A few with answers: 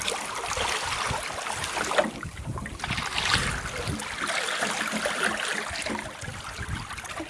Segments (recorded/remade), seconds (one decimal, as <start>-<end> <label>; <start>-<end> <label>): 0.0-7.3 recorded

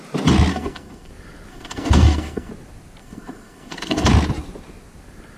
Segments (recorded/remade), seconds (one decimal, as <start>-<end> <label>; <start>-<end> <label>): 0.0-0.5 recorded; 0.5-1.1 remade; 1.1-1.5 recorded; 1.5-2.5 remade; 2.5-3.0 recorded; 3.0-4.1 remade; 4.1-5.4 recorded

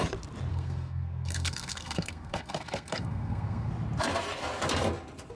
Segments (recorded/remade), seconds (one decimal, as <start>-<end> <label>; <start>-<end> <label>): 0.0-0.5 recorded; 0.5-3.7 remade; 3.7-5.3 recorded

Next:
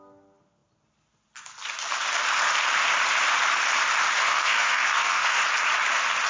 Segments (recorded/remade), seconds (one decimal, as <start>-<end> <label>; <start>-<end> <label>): 0.0-4.2 recorded; 4.2-5.4 remade; 5.4-6.3 recorded